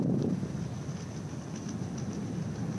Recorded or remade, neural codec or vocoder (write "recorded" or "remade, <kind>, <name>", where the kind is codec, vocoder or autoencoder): recorded